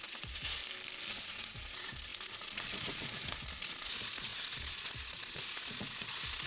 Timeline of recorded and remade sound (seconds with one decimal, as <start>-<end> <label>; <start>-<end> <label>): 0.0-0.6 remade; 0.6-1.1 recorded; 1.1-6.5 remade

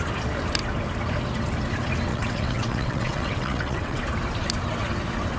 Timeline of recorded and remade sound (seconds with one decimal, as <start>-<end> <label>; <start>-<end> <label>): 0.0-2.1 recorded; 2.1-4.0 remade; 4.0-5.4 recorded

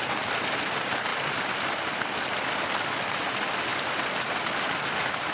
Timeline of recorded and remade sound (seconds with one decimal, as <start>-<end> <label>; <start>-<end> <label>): 0.0-1.1 recorded; 1.1-1.9 remade; 1.9-3.7 recorded; 3.7-5.3 remade

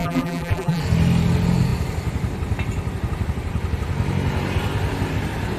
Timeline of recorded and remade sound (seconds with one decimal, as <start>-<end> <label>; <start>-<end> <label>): 0.0-0.8 remade; 0.8-5.6 recorded

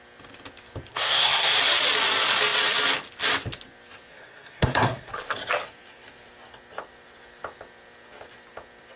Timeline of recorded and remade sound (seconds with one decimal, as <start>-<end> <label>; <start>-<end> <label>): 0.0-0.9 recorded; 0.9-1.5 remade; 1.5-4.1 recorded; 4.1-5.1 remade; 5.1-9.0 recorded

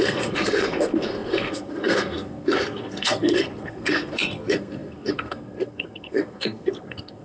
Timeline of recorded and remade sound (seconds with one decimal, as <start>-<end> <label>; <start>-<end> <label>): 0.0-7.2 remade

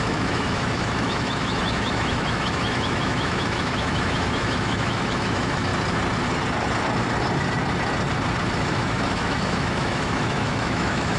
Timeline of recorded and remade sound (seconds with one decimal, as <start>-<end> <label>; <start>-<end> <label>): 0.0-5.7 remade; 5.7-8.5 recorded; 8.5-11.2 remade